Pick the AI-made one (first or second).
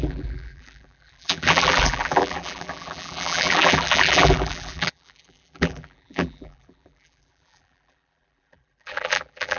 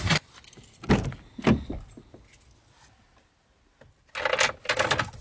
first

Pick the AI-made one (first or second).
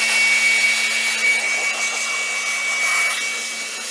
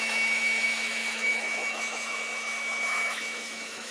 second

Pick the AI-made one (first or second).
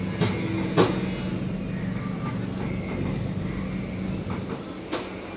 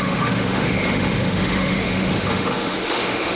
second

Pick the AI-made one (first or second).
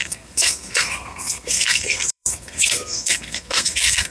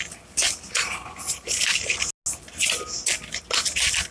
first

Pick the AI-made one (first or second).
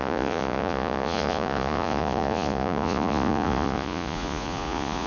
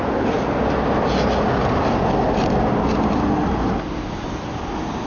first